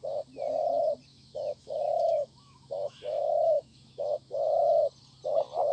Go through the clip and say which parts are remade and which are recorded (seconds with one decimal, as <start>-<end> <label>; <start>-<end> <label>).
0.0-1.1 recorded; 1.1-4.5 remade; 4.5-5.7 recorded